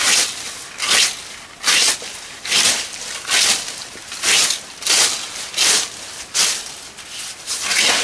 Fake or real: real